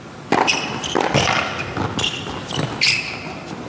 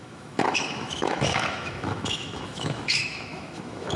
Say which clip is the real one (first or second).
first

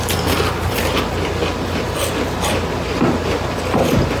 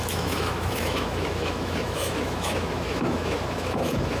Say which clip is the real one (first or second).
first